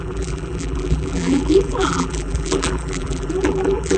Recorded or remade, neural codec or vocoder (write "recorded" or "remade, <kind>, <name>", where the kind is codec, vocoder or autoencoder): remade, vocoder, BigVGAN v2